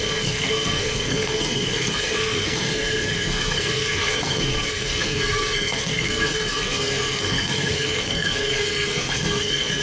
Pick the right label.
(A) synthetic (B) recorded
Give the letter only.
A